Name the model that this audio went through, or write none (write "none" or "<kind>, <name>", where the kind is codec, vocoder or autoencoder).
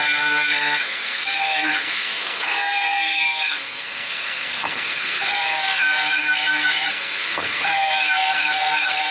codec, SNAC